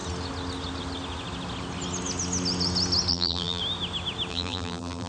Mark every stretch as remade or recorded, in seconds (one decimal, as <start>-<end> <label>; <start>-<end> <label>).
0.0-3.1 recorded; 3.1-3.6 remade; 3.6-4.3 recorded; 4.3-5.1 remade